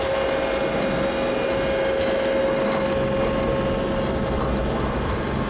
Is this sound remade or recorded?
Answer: recorded